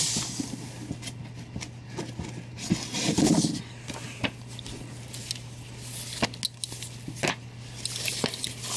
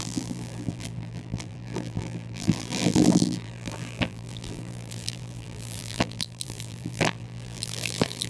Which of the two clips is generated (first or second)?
second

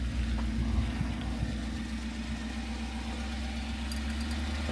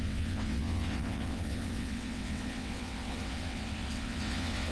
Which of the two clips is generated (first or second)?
second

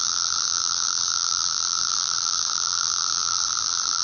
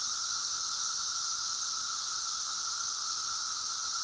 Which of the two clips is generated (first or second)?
first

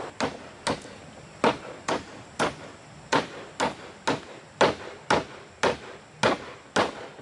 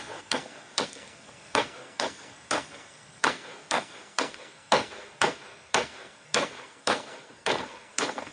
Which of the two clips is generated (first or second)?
second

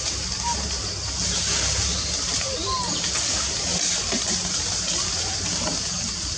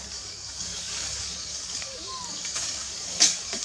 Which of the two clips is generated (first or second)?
second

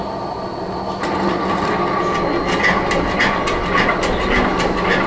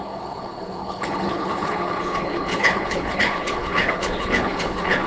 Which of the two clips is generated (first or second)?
second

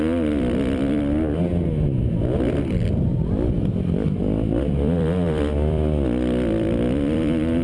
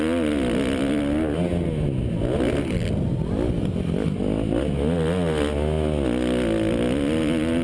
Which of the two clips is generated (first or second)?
first